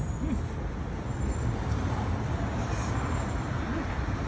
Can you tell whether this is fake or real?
real